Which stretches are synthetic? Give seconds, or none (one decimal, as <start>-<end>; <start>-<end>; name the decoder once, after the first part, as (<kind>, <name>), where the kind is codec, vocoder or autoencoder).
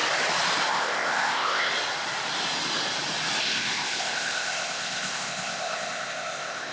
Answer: 0.7-1.7 (codec, ZipCodec); 3.4-6.7